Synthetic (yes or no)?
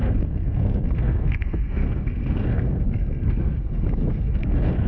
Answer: yes